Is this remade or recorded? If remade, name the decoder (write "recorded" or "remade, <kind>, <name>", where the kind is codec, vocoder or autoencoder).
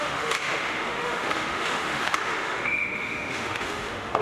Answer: remade, autoencoder, DAC-VAE